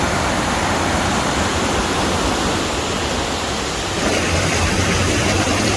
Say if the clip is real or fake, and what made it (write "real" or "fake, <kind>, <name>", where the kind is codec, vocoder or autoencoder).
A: fake, vocoder, BigVGAN v2